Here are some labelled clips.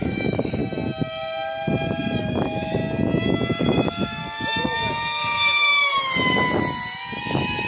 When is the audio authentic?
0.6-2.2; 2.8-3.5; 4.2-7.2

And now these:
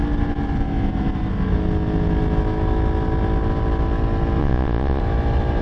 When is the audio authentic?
0.0-4.4; 5.0-5.6

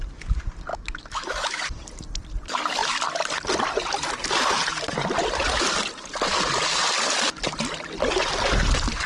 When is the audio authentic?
0.0-0.7; 1.6-9.1